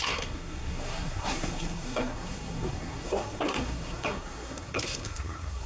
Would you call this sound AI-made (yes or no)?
yes